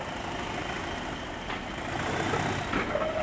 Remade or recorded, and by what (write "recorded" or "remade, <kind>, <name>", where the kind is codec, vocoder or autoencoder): recorded